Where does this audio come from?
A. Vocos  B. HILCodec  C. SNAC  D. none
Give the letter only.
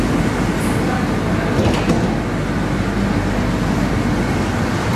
D